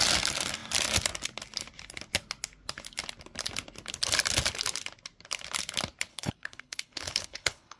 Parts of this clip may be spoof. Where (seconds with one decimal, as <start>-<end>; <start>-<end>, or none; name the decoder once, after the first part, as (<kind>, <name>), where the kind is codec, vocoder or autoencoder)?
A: 6.1-7.8 (codec, HILCodec)